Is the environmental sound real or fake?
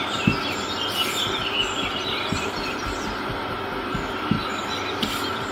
real